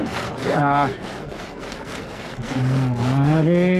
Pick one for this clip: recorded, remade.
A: remade